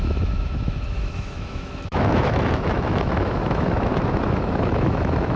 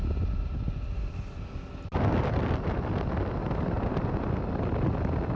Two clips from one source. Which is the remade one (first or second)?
first